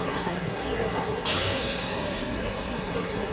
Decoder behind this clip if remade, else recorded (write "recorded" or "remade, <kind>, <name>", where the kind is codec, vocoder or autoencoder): remade, codec, SNAC